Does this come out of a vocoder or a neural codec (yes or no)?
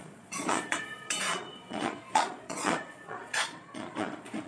yes